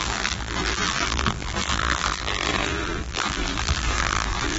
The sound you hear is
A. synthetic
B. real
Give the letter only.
A